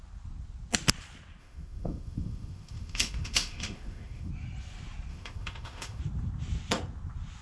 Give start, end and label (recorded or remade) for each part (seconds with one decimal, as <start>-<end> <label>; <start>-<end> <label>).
0.0-1.4 recorded; 1.4-4.3 remade; 4.3-5.1 recorded; 5.1-6.0 remade; 6.0-7.4 recorded

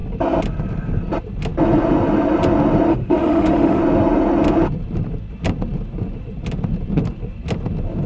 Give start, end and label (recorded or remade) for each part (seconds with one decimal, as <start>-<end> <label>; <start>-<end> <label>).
0.0-2.9 recorded; 2.9-3.8 remade; 3.8-8.1 recorded

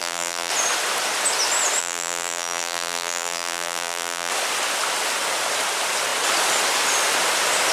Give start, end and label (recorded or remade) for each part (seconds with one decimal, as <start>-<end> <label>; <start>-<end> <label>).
0.0-0.5 remade; 0.5-1.8 recorded; 1.8-4.3 remade; 4.3-7.7 recorded

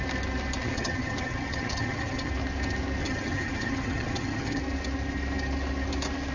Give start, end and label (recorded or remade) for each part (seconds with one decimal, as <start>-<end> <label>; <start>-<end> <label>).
0.0-0.6 recorded; 0.6-2.3 remade; 2.3-3.0 recorded; 3.0-4.6 remade; 4.6-6.3 recorded

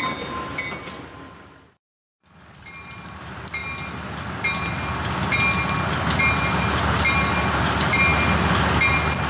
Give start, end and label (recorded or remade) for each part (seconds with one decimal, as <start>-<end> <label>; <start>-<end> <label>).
0.0-9.3 recorded

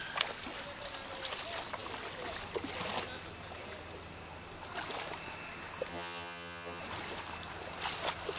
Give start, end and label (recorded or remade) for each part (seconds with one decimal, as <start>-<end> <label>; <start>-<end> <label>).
0.0-5.9 recorded; 5.9-6.8 remade; 6.8-8.4 recorded

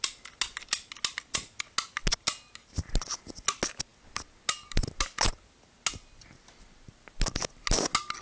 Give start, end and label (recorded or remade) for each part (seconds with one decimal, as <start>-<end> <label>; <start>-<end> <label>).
0.0-8.2 recorded